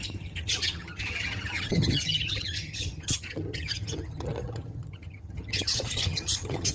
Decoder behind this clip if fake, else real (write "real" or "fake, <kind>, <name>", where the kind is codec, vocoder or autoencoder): fake, vocoder, HiFi-GAN